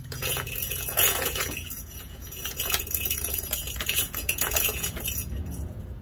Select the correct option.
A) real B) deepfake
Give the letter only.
B